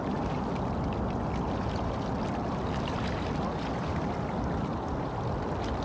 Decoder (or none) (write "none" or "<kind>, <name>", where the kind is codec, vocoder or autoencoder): none